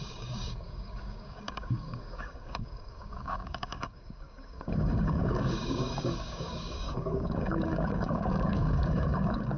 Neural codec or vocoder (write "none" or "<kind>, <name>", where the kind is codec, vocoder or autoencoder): codec, DAC